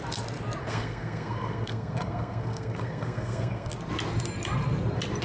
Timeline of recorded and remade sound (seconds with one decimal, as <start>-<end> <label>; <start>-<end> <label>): 0.0-0.6 recorded; 0.6-3.7 remade; 3.7-5.2 recorded